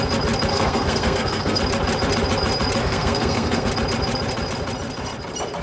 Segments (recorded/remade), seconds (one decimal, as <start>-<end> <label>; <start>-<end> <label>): 0.0-0.5 recorded; 0.5-1.6 remade; 1.6-2.8 recorded; 2.8-3.7 remade; 3.7-5.6 recorded